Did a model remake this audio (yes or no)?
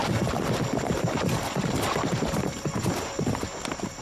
no